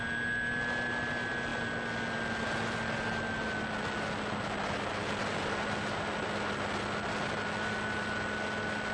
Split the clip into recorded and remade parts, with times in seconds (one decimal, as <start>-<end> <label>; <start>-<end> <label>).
0.0-8.9 recorded